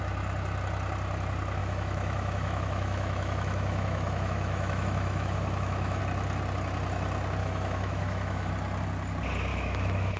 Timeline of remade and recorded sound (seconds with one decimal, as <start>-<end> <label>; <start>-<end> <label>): 0.0-1.6 recorded; 1.6-6.0 remade; 6.0-7.4 recorded; 7.4-8.5 remade; 8.5-9.5 recorded; 9.5-10.2 remade